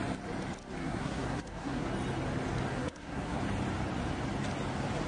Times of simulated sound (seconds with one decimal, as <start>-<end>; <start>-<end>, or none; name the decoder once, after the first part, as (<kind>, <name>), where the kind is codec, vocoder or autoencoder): 0.8-1.9 (codec, SNAC); 2.7-3.4